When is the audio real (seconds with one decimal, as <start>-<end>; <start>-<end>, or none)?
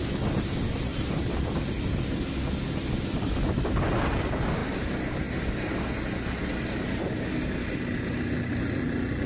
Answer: 0.0-9.3